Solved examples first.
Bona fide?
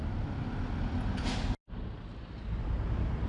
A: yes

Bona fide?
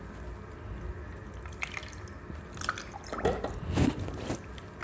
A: yes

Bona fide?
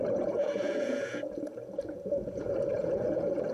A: no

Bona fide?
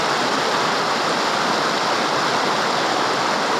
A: yes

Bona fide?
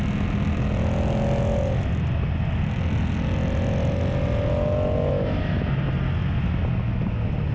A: yes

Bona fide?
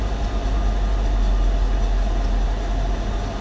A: yes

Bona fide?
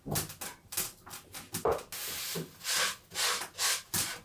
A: yes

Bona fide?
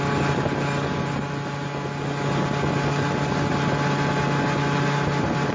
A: yes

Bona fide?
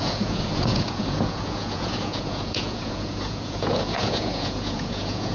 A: no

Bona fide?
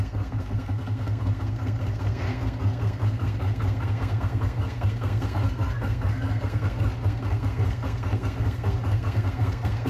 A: no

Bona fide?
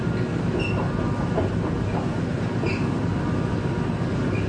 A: yes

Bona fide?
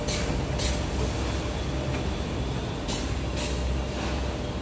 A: yes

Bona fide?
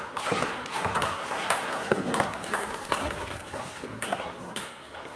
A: no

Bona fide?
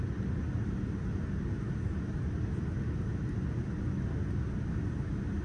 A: yes